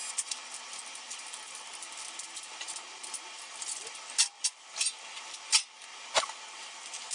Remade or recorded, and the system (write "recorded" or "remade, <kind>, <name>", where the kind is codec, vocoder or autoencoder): recorded